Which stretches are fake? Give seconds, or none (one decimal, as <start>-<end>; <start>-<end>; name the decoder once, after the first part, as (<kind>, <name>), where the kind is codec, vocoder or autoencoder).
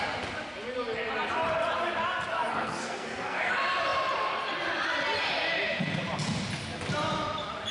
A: 2.3-3.5 (codec, SNAC)